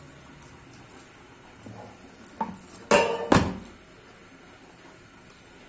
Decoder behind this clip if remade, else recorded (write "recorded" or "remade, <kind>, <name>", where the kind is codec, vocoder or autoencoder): recorded